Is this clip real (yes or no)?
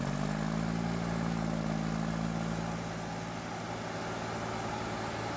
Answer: yes